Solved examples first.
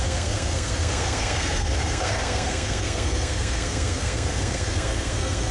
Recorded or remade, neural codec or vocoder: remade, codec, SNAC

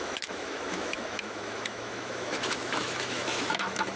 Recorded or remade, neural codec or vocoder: remade, autoencoder, DAC-VAE